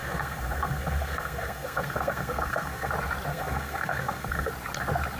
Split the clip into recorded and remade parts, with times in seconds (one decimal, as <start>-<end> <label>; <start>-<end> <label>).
0.0-2.9 remade; 2.9-3.3 recorded; 3.3-4.5 remade; 4.5-5.2 recorded